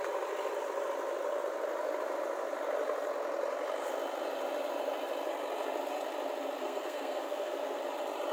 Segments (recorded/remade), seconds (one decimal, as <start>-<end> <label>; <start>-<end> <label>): 0.0-6.6 recorded; 6.6-7.8 remade; 7.8-8.3 recorded